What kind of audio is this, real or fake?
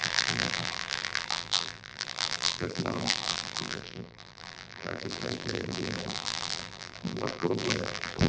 fake